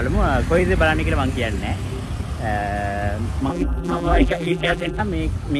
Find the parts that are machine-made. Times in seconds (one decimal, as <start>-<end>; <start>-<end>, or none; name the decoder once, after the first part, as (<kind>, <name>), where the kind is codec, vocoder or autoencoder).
3.5-5.0 (vocoder, BigVGAN v2)